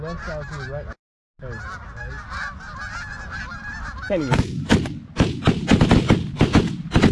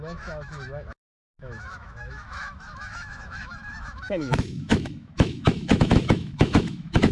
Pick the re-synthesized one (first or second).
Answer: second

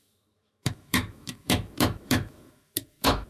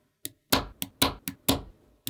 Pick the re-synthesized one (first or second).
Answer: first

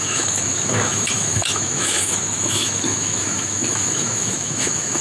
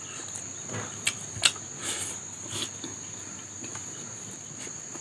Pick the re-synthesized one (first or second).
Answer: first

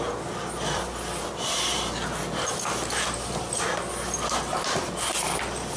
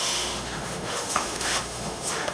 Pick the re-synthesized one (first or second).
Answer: second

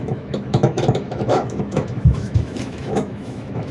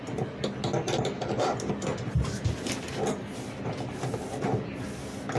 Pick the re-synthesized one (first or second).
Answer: first